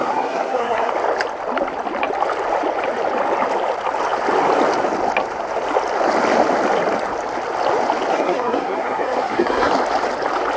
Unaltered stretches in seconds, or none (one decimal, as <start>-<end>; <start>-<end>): 0.9-8.1; 9.7-10.6